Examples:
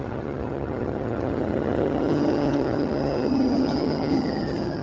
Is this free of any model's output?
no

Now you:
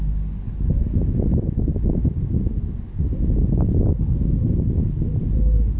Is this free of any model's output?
yes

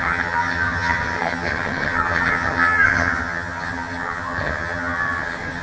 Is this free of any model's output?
no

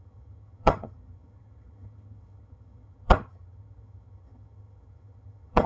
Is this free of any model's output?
no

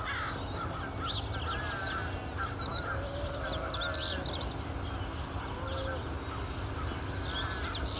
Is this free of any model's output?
yes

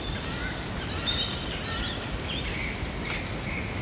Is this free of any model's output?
yes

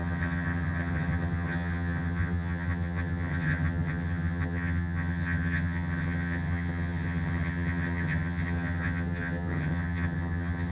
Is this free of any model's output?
no